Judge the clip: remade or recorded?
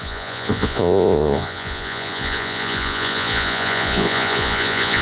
remade